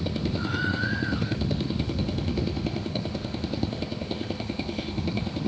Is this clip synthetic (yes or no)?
yes